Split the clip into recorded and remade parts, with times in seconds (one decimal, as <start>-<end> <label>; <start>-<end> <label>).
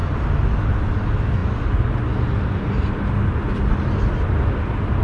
0.0-5.0 recorded